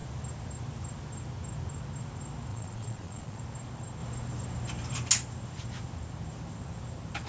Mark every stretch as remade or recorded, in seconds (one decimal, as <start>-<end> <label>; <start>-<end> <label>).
0.0-2.5 recorded; 2.5-3.4 remade; 3.4-7.3 recorded